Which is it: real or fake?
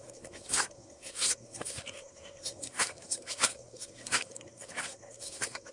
fake